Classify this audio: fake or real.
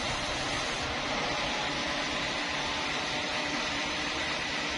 real